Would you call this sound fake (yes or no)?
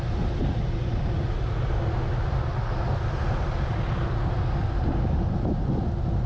no